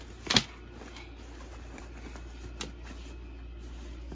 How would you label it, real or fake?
real